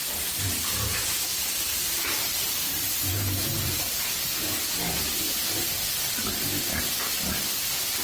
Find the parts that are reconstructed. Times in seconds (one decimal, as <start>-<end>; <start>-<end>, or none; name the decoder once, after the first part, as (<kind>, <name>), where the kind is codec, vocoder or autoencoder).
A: 1.3-4.1 (vocoder, BigVGAN v2)